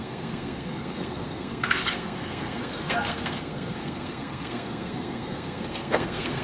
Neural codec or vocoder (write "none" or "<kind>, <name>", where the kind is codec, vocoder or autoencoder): codec, SNAC